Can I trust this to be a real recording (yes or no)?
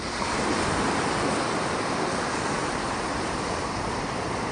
yes